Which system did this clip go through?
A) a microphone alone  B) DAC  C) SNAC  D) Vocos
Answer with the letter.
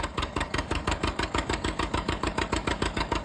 B